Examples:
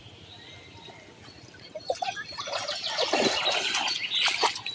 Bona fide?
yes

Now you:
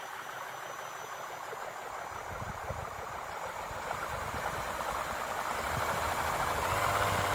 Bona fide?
yes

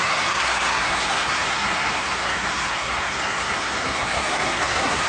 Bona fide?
no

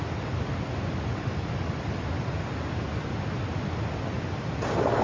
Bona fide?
yes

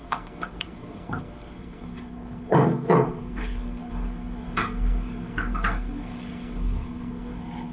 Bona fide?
no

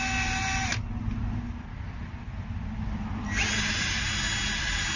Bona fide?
yes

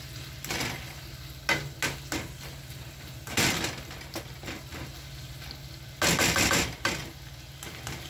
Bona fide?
yes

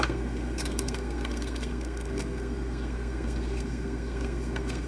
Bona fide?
no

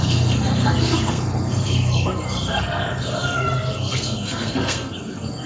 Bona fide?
no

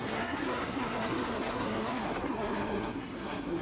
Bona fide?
no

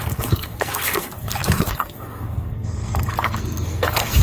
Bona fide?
no